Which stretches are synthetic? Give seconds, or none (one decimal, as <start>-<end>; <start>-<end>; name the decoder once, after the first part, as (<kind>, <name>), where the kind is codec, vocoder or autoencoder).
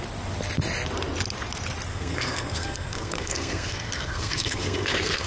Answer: 1.9-5.3 (codec, SNAC)